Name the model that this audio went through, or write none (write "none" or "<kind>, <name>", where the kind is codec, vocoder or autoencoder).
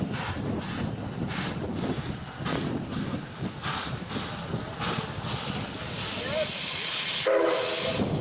none